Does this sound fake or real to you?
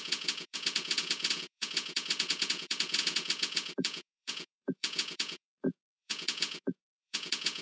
fake